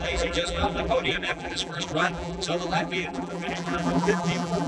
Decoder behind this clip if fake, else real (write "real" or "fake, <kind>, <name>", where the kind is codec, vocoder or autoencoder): fake, vocoder, BigVGAN v2